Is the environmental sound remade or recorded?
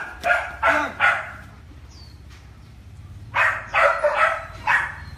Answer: remade